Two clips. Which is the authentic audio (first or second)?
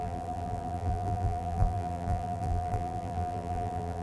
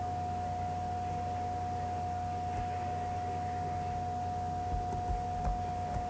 second